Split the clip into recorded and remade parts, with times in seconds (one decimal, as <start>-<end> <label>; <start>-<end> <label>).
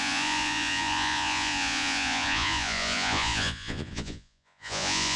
0.0-5.2 remade